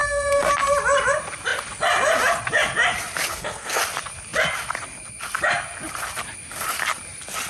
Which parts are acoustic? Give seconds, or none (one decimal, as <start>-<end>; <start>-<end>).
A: 0.5-3.3; 3.8-7.5